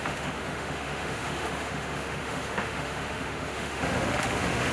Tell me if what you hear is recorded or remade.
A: remade